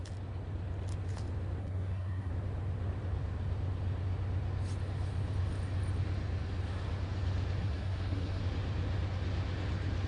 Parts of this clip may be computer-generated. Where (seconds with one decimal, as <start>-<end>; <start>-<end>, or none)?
1.6-2.3; 7.6-8.4